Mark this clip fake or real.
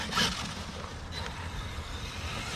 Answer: real